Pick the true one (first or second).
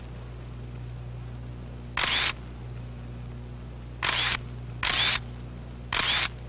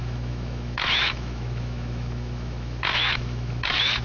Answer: first